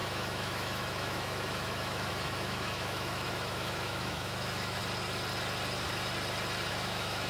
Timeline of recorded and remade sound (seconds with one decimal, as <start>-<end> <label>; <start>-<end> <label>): 0.0-4.8 remade; 4.8-6.7 recorded; 6.7-7.3 remade